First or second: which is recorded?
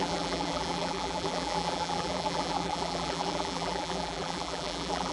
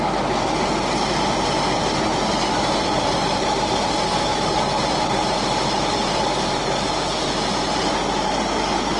second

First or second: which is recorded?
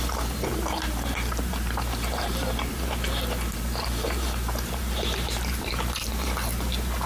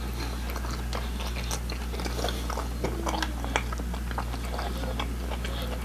second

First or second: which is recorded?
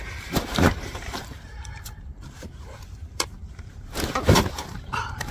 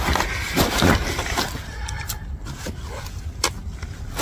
second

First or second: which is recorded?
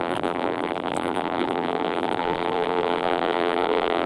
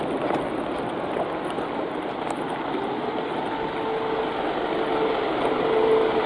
second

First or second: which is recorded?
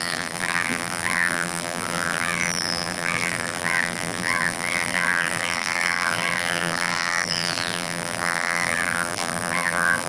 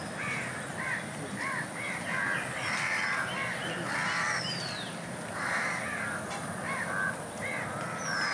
second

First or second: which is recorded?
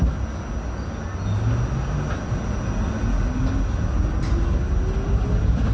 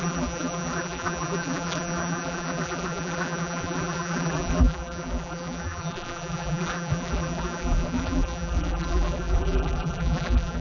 first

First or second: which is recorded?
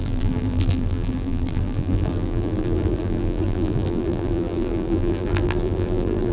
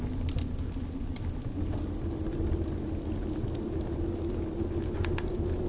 second